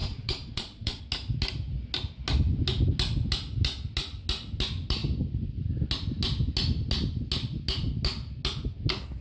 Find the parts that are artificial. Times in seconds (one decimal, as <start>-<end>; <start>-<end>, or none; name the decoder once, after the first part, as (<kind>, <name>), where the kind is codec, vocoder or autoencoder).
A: 0.0-1.0 (vocoder, Vocos)